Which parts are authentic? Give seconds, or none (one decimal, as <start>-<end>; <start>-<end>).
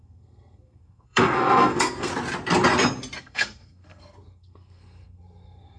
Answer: 2.1-3.2